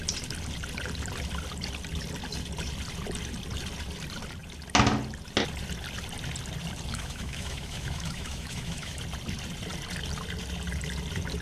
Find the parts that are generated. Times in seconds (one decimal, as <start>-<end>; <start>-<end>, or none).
6.9-9.0